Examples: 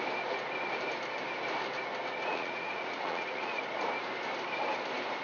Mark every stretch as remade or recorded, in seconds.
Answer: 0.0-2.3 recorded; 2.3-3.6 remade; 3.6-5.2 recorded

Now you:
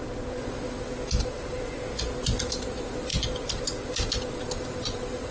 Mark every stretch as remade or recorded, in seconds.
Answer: 0.0-2.5 recorded; 2.5-3.1 remade; 3.1-4.3 recorded; 4.3-5.3 remade